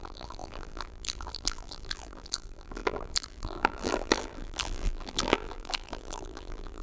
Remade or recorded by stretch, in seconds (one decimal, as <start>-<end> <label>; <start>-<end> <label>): 0.0-6.8 remade